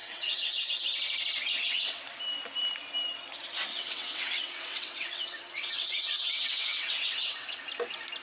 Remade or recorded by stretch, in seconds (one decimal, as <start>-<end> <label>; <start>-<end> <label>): 0.0-0.7 remade; 0.7-1.5 recorded; 1.5-2.0 remade; 2.0-3.7 recorded; 3.7-7.6 remade; 7.6-8.2 recorded